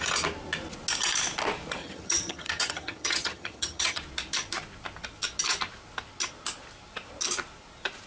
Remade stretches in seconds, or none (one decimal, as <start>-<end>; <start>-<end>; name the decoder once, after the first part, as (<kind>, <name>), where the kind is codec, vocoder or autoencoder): 1.8-4.0 (vocoder, HiFi-GAN)